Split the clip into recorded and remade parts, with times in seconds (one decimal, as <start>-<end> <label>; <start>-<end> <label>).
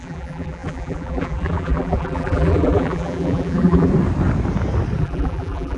0.0-3.9 remade; 3.9-5.0 recorded; 5.0-5.8 remade